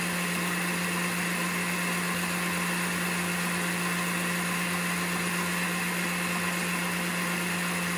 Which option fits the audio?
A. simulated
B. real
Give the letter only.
B